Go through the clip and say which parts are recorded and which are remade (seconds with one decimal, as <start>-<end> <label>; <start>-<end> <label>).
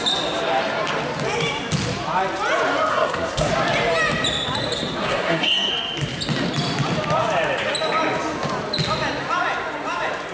0.0-2.9 recorded; 2.9-3.5 remade; 3.5-5.0 recorded; 5.0-5.7 remade; 5.7-10.3 recorded